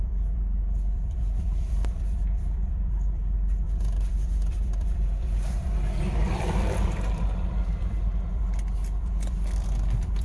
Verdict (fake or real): fake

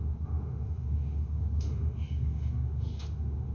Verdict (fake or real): fake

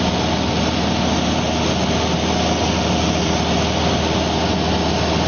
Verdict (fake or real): real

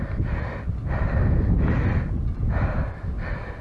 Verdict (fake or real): real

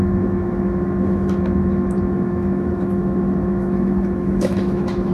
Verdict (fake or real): fake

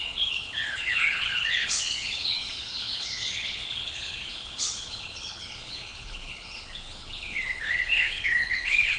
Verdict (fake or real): fake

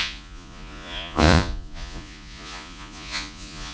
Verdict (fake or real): fake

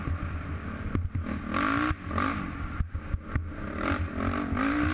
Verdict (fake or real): real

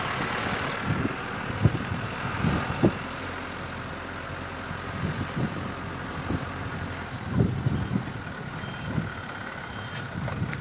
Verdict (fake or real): real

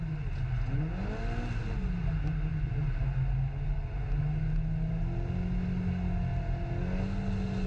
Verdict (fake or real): real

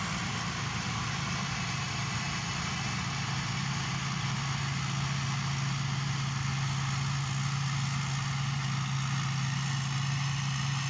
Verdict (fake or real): real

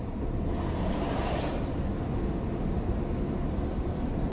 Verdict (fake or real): real